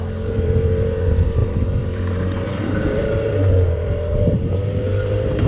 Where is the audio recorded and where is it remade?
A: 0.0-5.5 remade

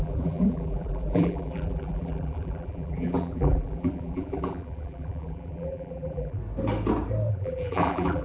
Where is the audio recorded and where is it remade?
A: 0.0-6.4 remade; 6.4-7.3 recorded; 7.3-8.2 remade

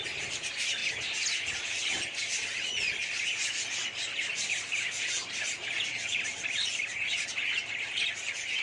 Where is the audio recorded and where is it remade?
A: 0.0-8.6 recorded

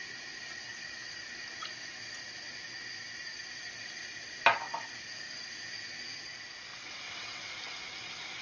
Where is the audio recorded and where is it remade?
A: 0.0-6.7 recorded; 6.7-7.5 remade; 7.5-8.4 recorded

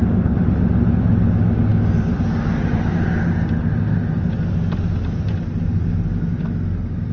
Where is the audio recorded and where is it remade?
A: 0.0-7.1 recorded

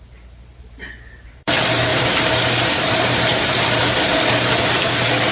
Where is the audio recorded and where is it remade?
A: 0.0-3.3 remade; 3.3-5.3 recorded